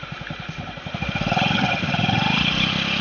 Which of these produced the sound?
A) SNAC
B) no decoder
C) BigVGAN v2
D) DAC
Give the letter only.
B